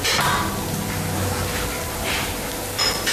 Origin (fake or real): real